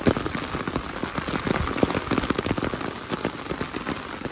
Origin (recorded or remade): recorded